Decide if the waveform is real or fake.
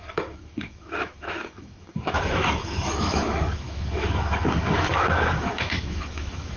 fake